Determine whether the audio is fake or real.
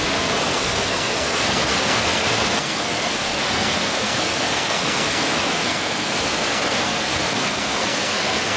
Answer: fake